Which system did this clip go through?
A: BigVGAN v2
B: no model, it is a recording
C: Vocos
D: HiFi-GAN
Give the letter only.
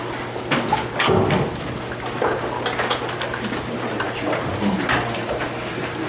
B